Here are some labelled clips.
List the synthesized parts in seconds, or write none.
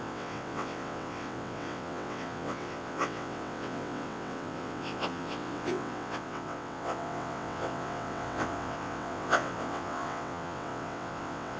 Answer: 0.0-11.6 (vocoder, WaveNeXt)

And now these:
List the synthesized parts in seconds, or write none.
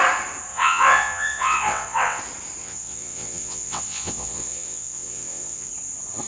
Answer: 0.5-2.2 (vocoder, WaveNeXt); 2.6-5.7